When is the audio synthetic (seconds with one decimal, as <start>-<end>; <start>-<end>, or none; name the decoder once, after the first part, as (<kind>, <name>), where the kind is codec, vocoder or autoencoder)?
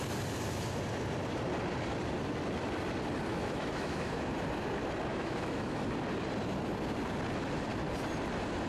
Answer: 3.3-4.1 (autoencoder, DAC-VAE); 5.1-5.8